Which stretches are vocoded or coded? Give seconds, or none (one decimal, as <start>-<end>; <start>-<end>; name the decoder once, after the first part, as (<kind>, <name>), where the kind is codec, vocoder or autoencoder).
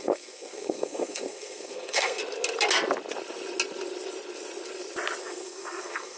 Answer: 0.0-2.2 (codec, SNAC); 5.2-6.2